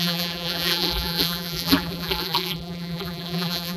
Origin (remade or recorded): remade